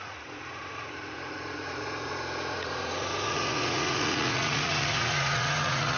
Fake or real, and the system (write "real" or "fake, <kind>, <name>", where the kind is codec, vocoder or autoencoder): fake, vocoder, Vocos